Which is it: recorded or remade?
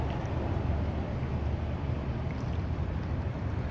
recorded